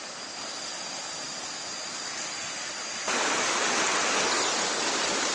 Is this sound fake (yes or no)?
no